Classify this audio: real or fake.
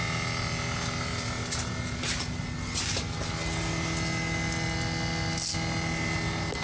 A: real